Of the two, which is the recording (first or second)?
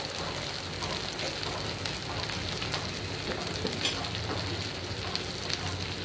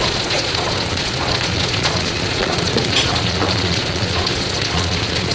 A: first